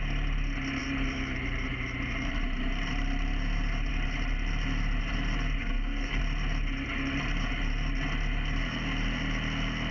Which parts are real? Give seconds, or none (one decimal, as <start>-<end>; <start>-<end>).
0.0-5.6; 6.2-9.9